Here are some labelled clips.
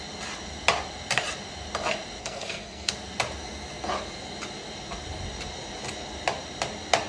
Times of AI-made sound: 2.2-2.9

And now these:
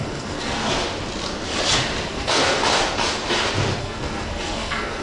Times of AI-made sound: 0.0-0.6; 2.1-2.6; 3.8-5.0

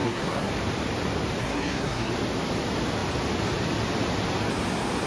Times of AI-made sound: 0.0-0.5; 1.4-2.1

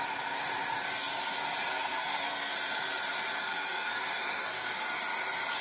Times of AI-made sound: 1.7-2.5; 3.4-4.8

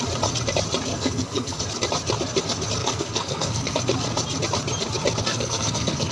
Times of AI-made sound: 0.9-1.6; 2.8-3.8; 5.3-6.1

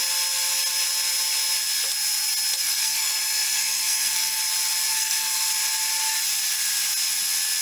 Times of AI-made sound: 2.6-4.4; 4.9-5.5

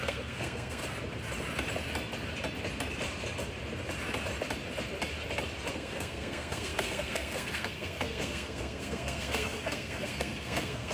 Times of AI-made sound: 0.0-0.8; 5.7-10.9

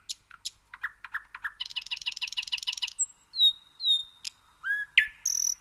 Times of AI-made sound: none